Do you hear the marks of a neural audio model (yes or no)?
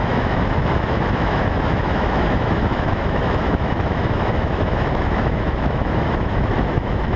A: yes